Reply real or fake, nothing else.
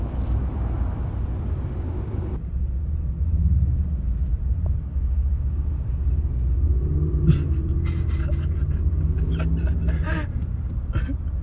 real